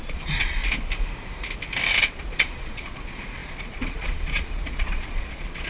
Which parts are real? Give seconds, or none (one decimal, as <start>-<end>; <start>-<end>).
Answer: 0.6-2.0